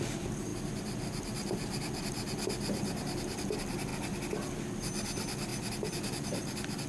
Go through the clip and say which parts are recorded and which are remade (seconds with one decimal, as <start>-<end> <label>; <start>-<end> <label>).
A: 0.0-6.9 recorded